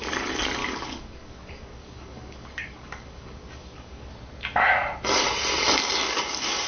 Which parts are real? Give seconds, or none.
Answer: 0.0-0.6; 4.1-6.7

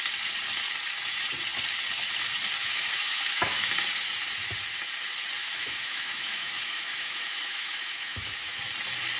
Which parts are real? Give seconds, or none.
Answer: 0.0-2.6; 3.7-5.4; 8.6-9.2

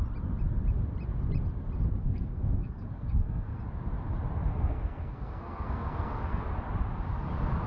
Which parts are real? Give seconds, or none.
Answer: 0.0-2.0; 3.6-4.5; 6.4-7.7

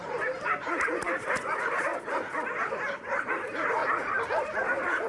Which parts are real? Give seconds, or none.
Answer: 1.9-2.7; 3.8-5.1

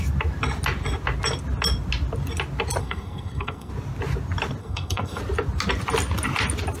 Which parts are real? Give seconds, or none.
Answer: 0.0-2.8; 3.7-4.6; 5.2-6.8

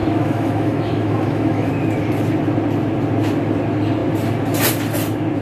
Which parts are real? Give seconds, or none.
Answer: 1.7-5.4